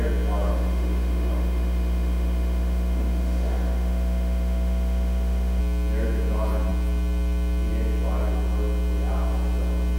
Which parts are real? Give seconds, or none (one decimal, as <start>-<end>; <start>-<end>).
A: 0.0-0.5; 5.6-10.0

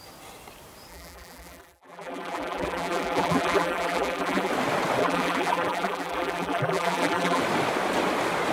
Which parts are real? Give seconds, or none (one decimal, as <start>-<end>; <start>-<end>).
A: 0.0-0.9; 4.5-5.0; 7.4-8.5

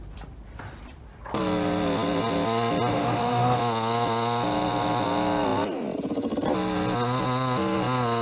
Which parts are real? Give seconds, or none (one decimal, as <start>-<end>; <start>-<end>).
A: 0.0-2.9; 3.6-8.2

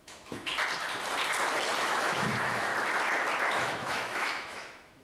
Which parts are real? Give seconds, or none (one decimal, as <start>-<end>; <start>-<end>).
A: 0.5-1.8; 2.7-3.4